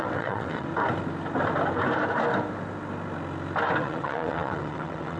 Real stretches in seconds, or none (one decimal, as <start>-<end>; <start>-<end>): 0.7-3.8